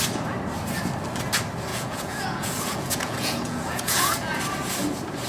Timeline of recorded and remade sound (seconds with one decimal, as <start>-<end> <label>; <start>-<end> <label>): 0.0-1.7 recorded; 1.7-4.4 remade; 4.4-5.3 recorded